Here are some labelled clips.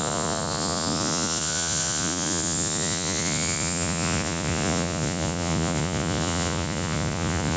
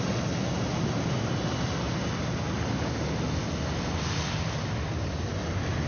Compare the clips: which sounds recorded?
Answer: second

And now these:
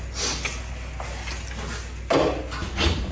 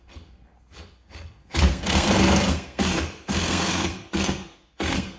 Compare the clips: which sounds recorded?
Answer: first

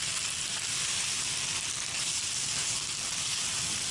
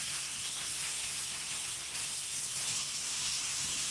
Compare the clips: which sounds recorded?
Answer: first